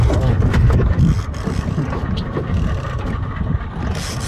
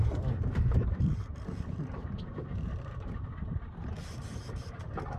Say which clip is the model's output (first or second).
second